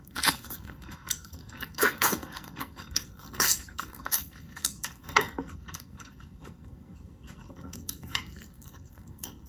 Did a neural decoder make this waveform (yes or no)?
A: yes